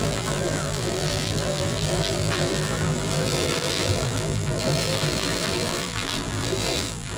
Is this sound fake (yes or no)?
yes